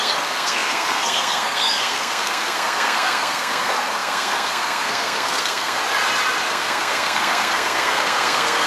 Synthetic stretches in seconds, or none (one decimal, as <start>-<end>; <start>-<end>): 0.0-5.8; 6.5-8.7